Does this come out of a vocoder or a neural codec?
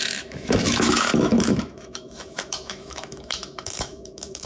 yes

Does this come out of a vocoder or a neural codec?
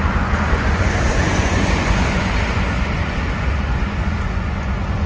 yes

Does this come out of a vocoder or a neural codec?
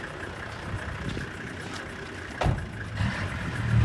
no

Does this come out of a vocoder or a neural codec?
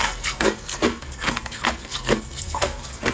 yes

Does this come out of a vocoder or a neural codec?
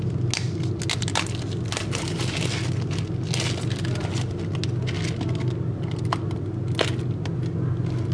no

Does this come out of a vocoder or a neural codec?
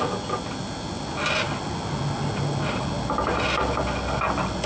no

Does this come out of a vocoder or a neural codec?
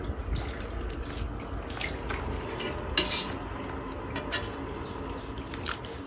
no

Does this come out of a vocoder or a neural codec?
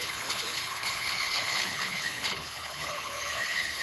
yes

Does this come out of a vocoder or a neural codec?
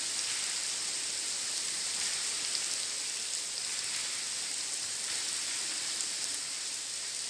no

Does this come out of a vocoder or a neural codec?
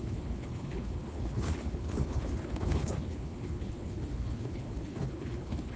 yes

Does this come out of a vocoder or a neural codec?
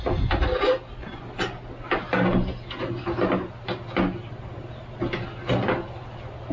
no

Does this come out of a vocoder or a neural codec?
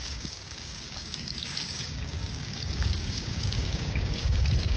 yes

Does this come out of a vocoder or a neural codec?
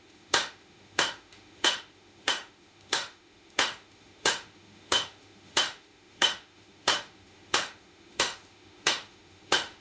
yes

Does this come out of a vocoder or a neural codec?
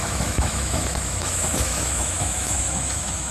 yes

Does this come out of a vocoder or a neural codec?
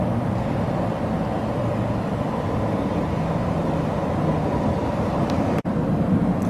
yes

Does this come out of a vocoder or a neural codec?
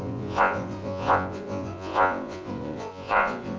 yes